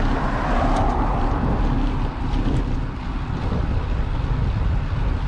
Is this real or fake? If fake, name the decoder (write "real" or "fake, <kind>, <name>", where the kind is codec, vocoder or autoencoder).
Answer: real